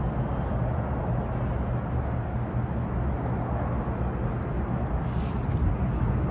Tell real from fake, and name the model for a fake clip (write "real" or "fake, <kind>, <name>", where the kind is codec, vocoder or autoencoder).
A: real